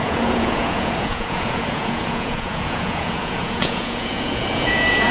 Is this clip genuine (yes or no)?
no